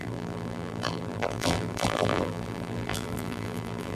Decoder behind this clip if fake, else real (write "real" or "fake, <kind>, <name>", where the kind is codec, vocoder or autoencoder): fake, vocoder, BigVGAN v2